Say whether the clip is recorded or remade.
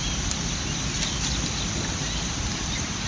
recorded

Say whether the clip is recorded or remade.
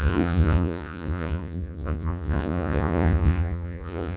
remade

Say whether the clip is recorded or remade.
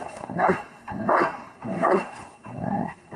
remade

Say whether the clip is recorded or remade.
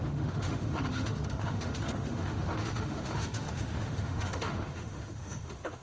remade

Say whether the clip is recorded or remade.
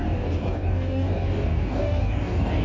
remade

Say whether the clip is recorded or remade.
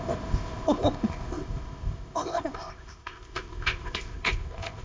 remade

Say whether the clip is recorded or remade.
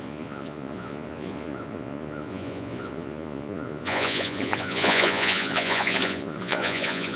remade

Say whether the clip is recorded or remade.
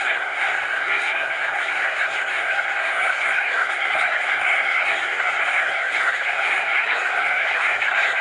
remade